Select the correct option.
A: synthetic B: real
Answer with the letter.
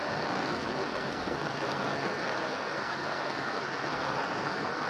A